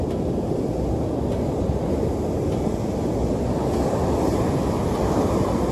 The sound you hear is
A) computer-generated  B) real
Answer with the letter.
B